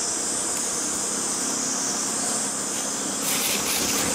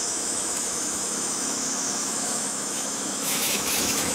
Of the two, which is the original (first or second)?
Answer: first